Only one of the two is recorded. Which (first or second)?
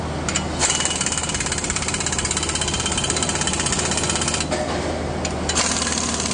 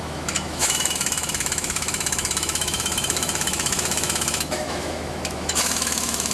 first